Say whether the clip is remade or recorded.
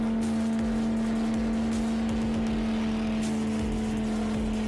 recorded